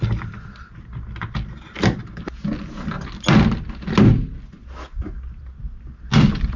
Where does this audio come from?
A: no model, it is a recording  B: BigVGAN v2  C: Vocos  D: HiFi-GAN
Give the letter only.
A